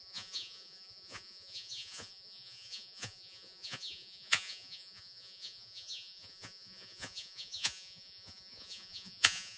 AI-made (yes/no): yes